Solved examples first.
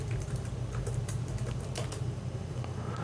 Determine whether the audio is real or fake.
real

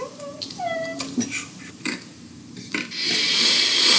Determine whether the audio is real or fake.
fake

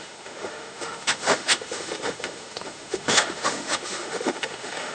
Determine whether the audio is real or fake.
fake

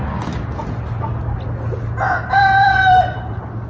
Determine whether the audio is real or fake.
real